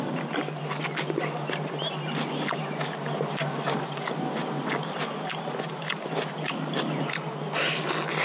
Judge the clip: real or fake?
real